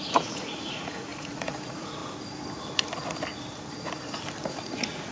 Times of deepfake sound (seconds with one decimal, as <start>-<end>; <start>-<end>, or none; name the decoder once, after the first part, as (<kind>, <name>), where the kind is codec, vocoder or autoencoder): 0.0-2.0 (vocoder, Vocos); 4.5-5.1